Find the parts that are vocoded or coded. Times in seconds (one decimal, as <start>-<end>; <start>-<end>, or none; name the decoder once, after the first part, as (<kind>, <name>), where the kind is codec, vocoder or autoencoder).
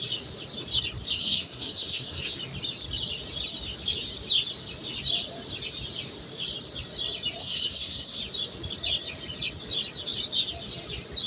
1.2-2.4 (codec, SNAC); 7.4-8.2